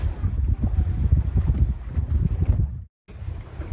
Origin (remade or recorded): recorded